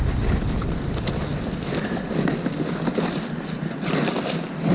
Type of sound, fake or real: real